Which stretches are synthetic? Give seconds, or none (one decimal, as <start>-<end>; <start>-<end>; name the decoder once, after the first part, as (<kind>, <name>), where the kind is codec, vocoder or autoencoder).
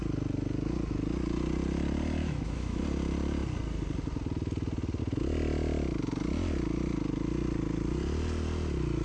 2.2-2.8 (autoencoder, DAC-VAE)